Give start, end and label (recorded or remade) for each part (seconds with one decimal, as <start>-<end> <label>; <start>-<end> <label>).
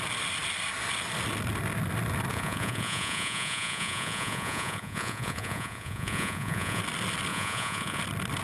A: 0.0-2.3 recorded; 2.3-6.8 remade; 6.8-7.3 recorded; 7.3-8.0 remade; 8.0-8.4 recorded